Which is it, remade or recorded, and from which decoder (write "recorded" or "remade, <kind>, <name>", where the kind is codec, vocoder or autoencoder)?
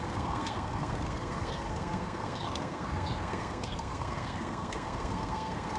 remade, codec, SNAC